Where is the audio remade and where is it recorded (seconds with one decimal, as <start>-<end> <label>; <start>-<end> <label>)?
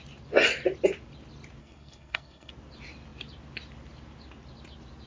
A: 0.0-1.6 recorded; 1.6-2.5 remade; 2.5-5.1 recorded